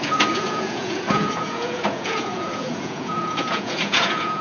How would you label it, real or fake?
fake